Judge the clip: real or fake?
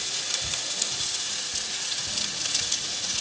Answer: fake